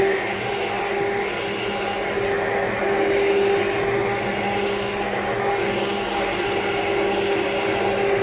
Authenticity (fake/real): real